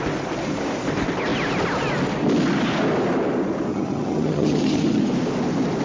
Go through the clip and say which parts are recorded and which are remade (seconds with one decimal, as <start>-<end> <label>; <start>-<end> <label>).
0.0-3.7 recorded; 3.7-5.0 remade; 5.0-5.8 recorded